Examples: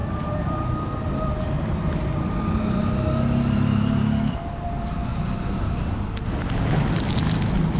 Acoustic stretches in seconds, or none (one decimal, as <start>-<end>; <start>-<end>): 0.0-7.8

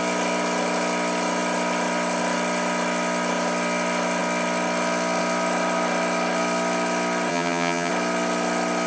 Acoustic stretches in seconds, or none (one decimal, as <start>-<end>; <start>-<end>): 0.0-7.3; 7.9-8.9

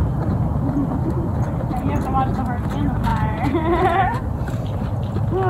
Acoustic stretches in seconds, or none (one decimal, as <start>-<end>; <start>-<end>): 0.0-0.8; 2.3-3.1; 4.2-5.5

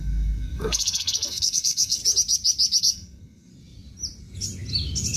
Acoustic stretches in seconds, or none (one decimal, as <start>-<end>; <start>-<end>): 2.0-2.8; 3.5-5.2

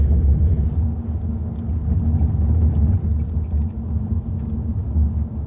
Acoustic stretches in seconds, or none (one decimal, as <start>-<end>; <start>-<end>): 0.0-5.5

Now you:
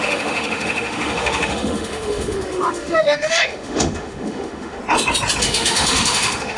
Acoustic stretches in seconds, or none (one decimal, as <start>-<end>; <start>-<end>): 4.8-5.4

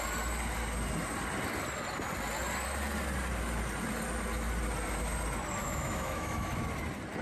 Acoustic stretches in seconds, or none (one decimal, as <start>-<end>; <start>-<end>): 0.0-5.6; 6.6-7.2